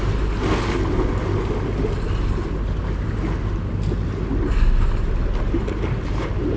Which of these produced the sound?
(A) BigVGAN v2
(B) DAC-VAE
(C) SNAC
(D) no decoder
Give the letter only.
D